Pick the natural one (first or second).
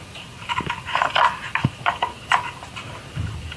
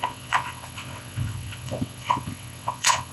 first